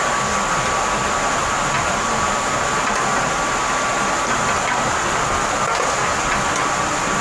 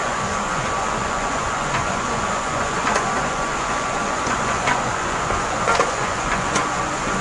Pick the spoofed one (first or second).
second